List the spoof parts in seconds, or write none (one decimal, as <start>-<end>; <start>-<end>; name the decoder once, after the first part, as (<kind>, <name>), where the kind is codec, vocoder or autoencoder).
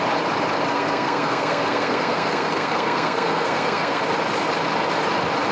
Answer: 0.7-4.0 (codec, SNAC)